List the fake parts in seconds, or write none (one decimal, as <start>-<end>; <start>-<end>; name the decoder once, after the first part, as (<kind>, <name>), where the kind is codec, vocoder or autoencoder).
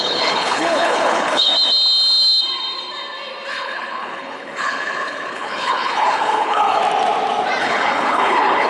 0.0-1.5 (codec, HILCodec); 3.5-6.8; 7.6-8.7